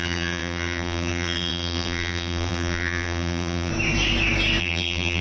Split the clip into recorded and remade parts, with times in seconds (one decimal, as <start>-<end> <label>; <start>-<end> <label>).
0.0-3.7 remade; 3.7-4.6 recorded; 4.6-5.2 remade